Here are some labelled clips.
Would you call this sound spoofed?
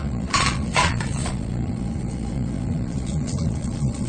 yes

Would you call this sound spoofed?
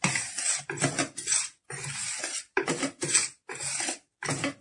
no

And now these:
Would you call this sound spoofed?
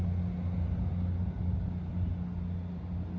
no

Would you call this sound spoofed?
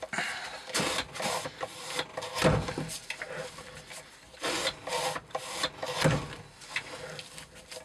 no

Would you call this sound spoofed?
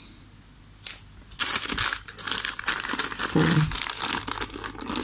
no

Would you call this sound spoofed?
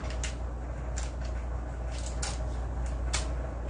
no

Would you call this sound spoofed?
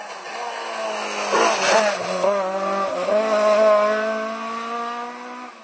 no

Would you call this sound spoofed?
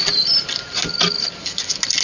no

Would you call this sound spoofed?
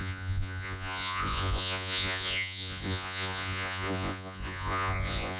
yes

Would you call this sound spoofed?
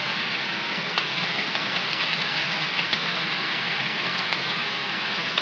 yes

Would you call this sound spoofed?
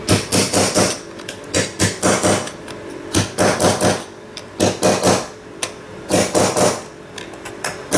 no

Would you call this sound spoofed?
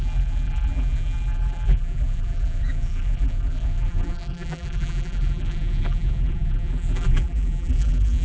yes